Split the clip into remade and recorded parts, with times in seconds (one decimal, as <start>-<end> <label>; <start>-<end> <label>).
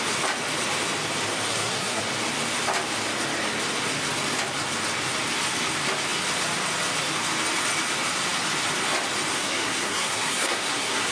0.0-1.5 recorded; 1.5-2.0 remade; 2.0-9.3 recorded; 9.3-11.1 remade